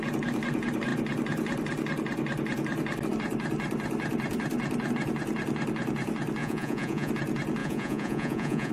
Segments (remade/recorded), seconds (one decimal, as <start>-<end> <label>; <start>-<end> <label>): 0.0-6.4 recorded; 6.4-7.1 remade; 7.1-7.6 recorded; 7.6-8.7 remade